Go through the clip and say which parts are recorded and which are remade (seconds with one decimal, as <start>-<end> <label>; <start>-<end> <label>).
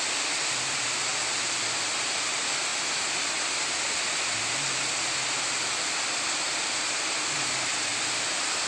0.0-1.1 remade; 1.1-2.3 recorded; 2.3-2.7 remade; 2.7-6.0 recorded; 6.0-8.7 remade